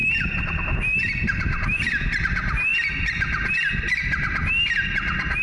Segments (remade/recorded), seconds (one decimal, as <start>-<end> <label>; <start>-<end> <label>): 0.0-2.2 remade; 2.2-5.4 recorded